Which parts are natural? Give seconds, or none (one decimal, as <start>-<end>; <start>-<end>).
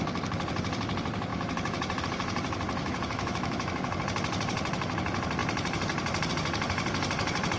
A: 0.0-1.3; 2.0-2.8; 4.0-7.6